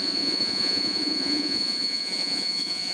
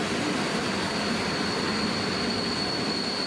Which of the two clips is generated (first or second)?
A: first